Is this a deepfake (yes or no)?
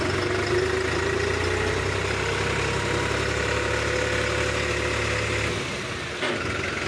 no